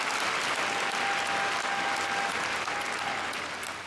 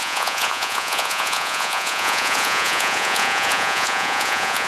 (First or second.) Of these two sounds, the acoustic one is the first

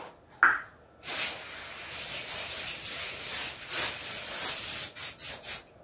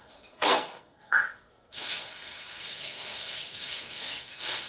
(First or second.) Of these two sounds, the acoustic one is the first